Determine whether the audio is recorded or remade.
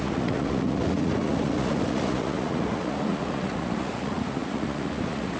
remade